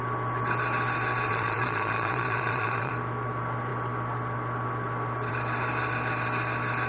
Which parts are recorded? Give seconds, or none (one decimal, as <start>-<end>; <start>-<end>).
0.0-1.3; 2.9-6.9